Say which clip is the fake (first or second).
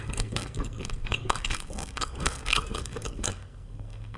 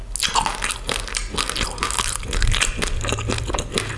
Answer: first